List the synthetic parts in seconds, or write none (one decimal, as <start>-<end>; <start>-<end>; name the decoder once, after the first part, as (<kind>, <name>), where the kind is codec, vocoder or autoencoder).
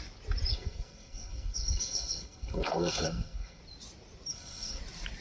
0.5-3.6 (codec, SNAC); 4.3-4.8